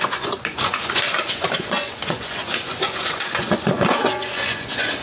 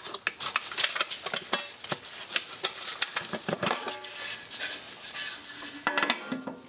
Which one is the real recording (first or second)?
second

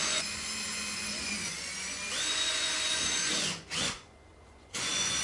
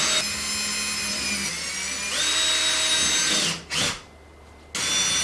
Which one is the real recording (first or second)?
second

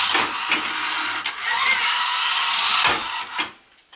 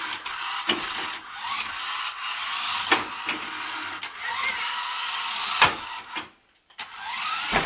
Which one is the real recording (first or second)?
first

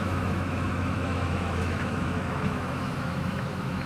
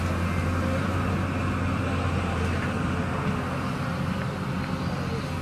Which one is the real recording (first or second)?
second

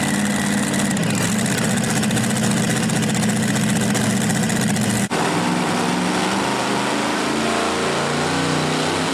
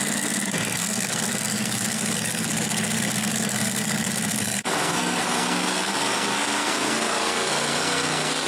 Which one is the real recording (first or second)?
first